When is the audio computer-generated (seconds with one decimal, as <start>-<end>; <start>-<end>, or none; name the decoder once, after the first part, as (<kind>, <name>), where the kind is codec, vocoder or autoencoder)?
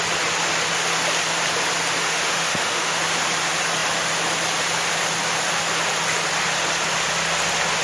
2.0-3.0 (autoencoder, DAC-VAE)